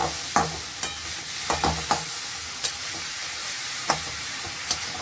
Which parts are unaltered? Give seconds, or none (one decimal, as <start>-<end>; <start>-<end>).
0.0-3.4